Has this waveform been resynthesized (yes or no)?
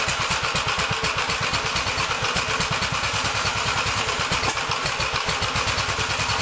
no